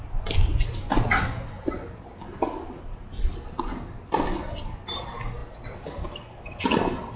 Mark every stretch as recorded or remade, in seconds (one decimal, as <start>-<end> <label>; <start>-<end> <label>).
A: 0.0-7.2 recorded